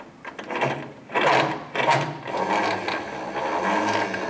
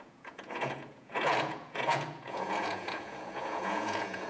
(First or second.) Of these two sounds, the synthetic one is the second